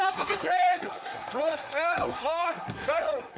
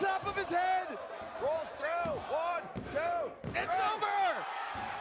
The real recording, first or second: second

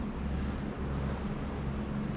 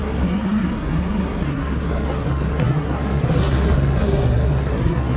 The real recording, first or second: first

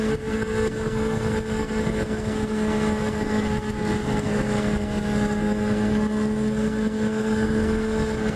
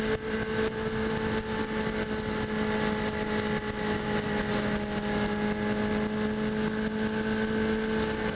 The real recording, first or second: second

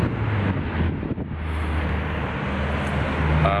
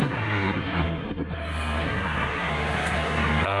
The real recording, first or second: first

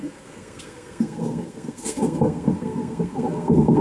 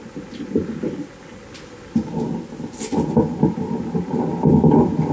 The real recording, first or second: second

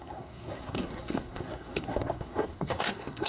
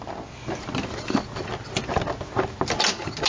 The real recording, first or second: second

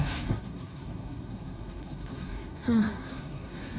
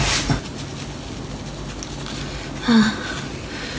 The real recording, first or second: second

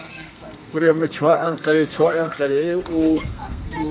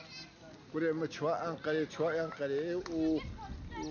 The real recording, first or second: second